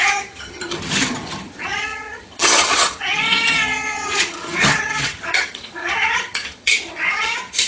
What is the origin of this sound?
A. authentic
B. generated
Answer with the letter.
B